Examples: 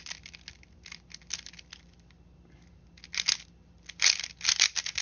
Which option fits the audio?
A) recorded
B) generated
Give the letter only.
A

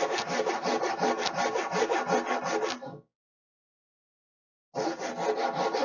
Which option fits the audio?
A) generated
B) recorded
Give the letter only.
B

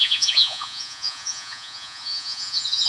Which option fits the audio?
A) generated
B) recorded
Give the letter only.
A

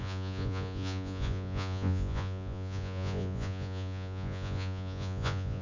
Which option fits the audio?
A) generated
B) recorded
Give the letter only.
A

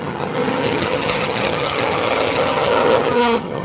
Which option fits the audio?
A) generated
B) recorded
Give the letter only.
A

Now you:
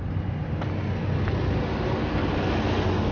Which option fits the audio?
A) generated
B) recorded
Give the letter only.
B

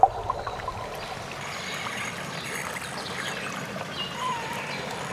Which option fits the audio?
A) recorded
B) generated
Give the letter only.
A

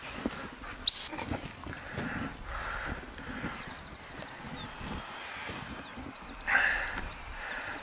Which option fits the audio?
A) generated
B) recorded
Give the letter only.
B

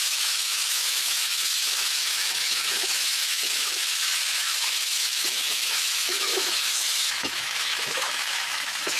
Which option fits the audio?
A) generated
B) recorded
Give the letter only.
A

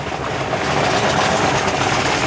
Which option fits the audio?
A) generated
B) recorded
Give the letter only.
B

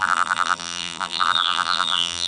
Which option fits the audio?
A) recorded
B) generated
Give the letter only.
B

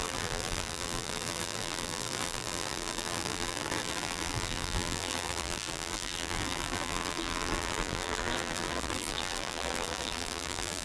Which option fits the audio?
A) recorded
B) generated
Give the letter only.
B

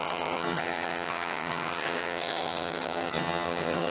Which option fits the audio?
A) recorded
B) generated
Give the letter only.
B